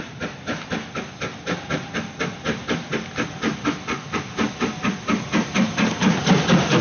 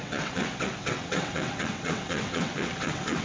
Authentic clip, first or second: first